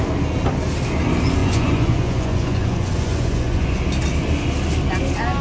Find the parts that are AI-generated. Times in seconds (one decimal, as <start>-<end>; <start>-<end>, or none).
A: 1.4-3.8